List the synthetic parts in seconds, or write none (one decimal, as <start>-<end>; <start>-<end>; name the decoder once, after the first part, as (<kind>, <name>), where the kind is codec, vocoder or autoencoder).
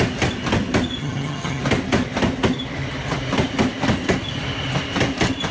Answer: 1.0-1.6 (vocoder, HiFi-GAN)